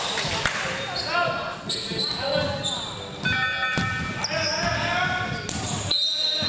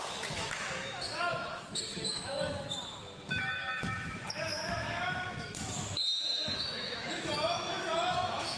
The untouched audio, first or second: first